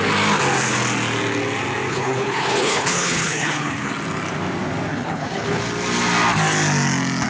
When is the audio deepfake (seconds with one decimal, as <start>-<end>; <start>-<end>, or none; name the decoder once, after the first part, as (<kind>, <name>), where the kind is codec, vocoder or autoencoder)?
1.9-3.9 (codec, HILCodec); 4.9-5.6